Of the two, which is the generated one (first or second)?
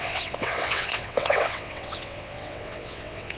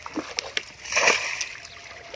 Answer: first